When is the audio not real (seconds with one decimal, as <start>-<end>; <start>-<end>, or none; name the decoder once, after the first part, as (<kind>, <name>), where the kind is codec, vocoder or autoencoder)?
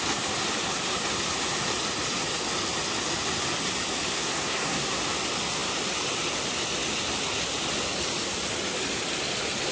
4.1-5.0 (codec, SNAC)